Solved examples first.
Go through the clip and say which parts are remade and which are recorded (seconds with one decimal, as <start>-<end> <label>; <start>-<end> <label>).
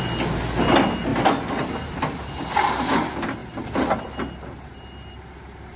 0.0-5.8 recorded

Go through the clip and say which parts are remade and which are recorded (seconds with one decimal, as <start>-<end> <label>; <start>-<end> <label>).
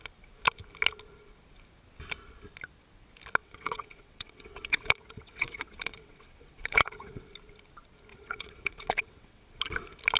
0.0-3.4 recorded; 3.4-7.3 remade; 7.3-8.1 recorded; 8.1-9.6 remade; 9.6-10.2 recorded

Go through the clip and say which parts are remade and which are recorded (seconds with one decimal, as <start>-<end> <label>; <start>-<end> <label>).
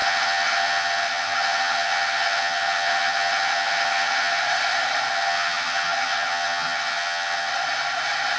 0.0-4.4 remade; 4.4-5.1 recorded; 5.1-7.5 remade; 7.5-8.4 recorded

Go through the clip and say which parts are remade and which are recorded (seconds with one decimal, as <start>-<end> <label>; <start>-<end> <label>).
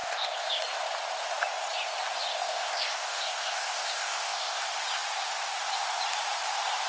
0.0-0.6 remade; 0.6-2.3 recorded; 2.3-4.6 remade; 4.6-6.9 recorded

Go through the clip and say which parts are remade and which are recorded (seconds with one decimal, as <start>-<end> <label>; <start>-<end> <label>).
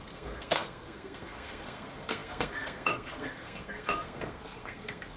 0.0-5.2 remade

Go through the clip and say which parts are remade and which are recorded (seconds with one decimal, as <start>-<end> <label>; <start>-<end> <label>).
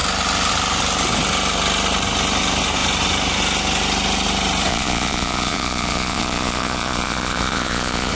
0.0-4.7 recorded; 4.7-8.1 remade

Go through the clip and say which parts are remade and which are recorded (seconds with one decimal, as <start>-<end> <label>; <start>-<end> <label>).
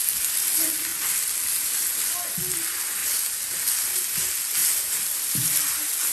0.0-6.1 recorded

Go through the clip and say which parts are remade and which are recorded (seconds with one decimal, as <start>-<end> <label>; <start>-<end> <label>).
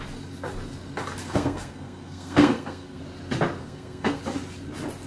0.0-1.2 recorded; 1.2-3.0 remade; 3.0-3.6 recorded; 3.6-4.2 remade; 4.2-5.1 recorded